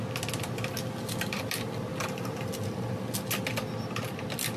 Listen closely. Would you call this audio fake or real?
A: real